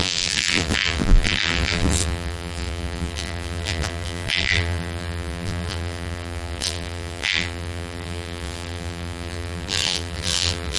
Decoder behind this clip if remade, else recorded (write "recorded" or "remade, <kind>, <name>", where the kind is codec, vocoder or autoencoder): remade, vocoder, BigVGAN v2